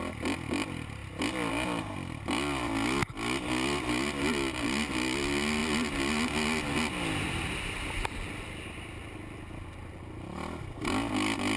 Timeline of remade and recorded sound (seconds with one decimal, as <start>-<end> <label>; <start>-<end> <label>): 0.0-11.6 recorded